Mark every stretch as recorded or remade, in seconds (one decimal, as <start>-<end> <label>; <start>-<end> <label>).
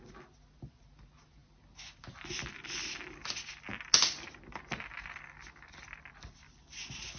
0.0-7.2 recorded